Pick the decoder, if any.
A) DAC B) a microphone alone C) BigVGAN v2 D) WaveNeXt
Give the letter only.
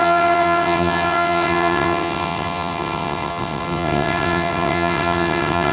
D